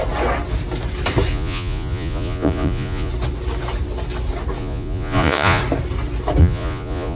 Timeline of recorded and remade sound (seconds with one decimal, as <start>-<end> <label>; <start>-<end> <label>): 0.0-1.3 recorded; 1.3-3.1 remade; 3.1-4.6 recorded; 4.6-5.6 remade; 5.6-6.4 recorded; 6.4-7.2 remade